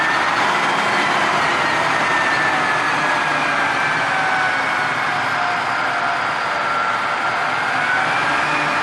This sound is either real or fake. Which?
real